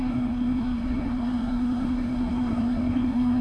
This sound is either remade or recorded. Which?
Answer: remade